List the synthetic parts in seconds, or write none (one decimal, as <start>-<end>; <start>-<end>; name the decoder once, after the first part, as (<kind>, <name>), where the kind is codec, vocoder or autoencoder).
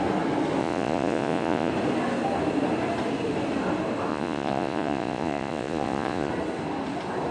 0.6-1.7 (vocoder, Vocos); 4.1-6.3